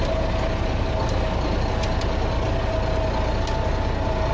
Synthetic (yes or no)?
no